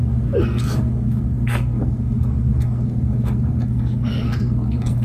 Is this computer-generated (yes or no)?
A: yes